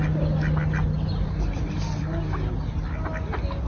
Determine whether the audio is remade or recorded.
recorded